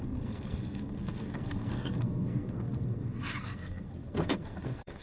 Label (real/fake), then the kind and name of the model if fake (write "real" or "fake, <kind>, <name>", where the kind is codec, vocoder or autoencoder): fake, codec, SNAC